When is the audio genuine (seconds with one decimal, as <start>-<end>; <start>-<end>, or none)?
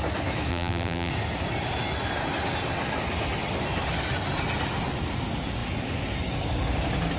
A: 0.0-0.5; 1.1-7.2